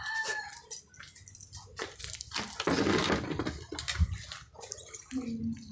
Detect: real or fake real